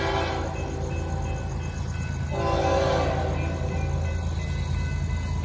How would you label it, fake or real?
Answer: real